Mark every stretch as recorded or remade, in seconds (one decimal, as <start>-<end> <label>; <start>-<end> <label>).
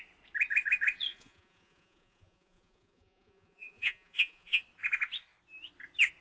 0.0-1.1 recorded; 1.1-4.6 remade; 4.6-6.2 recorded